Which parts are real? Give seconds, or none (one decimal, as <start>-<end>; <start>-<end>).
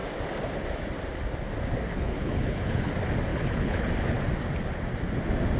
0.0-1.9; 2.9-3.3; 3.9-5.6